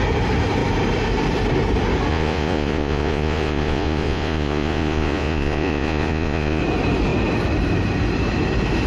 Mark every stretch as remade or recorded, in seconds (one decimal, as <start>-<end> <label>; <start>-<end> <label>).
0.0-2.1 recorded; 2.1-6.6 remade; 6.6-8.9 recorded